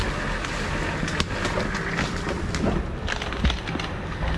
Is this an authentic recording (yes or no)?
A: yes